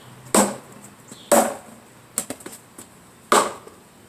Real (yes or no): yes